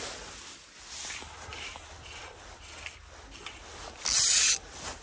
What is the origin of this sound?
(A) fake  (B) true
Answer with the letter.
B